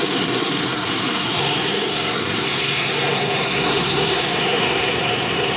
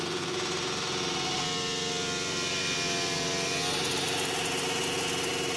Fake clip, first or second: first